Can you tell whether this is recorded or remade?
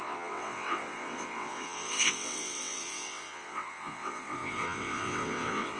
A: remade